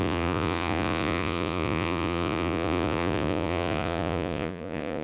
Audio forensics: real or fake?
fake